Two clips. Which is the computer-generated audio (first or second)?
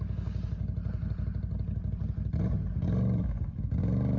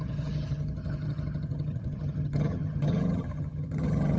second